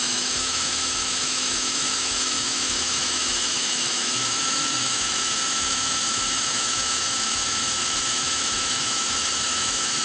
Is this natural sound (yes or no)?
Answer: no